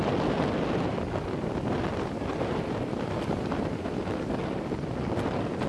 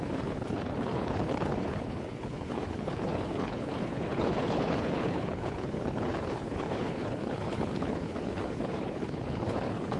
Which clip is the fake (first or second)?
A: second